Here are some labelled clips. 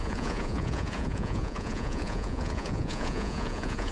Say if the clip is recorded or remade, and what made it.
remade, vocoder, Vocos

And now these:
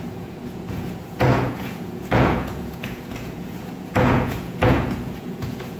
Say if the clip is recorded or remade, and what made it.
remade, vocoder, Vocos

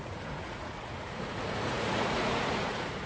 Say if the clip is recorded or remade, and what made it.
remade, vocoder, Vocos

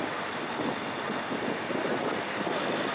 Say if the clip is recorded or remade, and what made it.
recorded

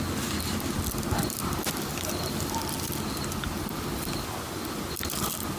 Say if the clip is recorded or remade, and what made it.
recorded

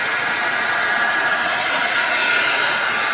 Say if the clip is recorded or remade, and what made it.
remade, vocoder, Vocos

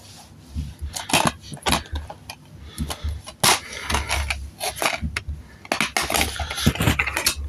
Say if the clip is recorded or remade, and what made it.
recorded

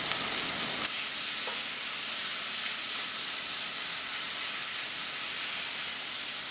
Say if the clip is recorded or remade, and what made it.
recorded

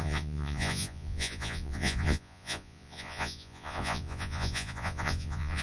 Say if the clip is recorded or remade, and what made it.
remade, vocoder, Vocos